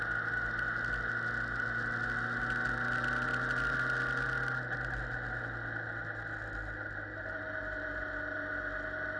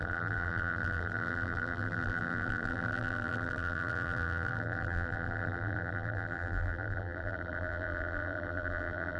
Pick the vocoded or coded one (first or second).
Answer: second